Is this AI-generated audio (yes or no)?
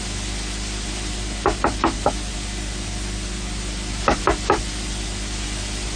no